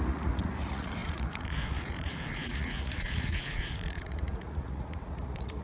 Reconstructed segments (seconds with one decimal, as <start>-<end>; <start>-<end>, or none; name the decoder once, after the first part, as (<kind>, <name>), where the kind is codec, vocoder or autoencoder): 0.0-5.6 (vocoder, Vocos)